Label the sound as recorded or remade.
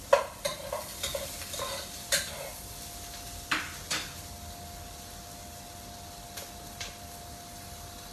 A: recorded